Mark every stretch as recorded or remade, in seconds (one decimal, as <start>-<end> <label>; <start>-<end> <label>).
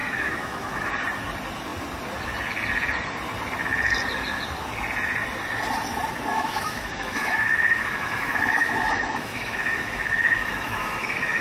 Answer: 0.0-0.9 remade; 0.9-6.3 recorded; 6.3-11.4 remade